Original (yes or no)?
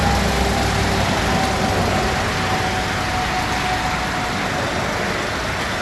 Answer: yes